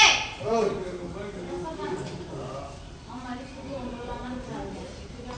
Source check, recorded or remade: remade